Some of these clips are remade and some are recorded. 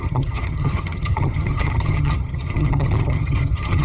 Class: remade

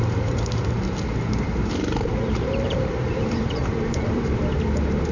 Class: remade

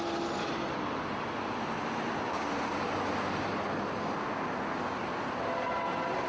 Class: recorded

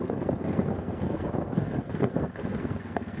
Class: remade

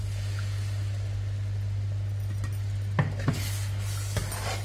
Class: recorded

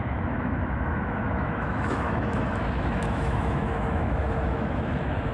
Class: remade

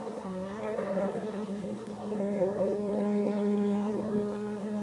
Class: remade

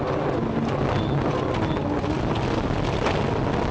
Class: recorded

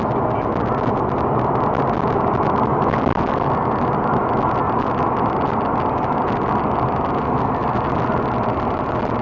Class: recorded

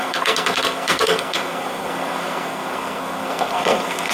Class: remade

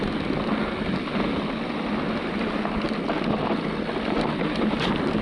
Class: recorded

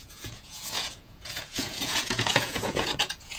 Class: remade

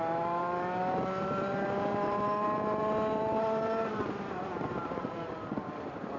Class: remade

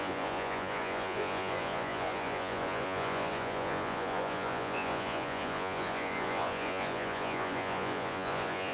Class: remade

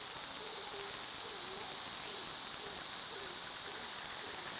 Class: recorded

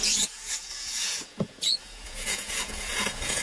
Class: remade